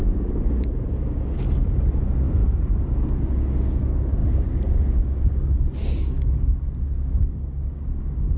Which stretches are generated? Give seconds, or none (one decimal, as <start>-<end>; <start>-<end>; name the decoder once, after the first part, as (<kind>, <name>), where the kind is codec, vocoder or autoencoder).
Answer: 0.0-8.4 (codec, DAC)